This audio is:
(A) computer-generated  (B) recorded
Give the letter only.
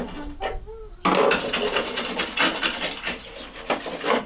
B